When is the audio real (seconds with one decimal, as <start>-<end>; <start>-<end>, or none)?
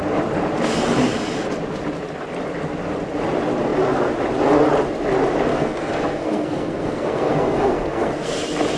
0.0-5.5; 8.4-8.8